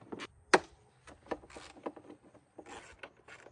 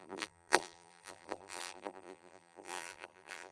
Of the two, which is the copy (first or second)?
second